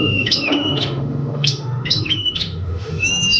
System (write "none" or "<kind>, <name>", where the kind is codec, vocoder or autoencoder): autoencoder, DAC-VAE